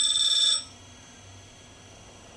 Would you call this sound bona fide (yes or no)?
yes